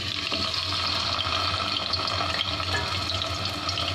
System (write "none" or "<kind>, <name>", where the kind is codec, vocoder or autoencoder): none